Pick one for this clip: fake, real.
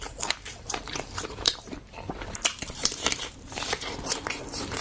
fake